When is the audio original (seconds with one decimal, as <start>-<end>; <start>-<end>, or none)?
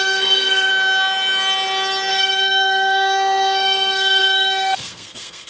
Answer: 0.7-2.1